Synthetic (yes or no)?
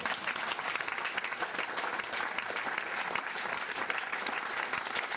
no